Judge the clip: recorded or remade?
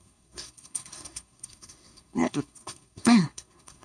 remade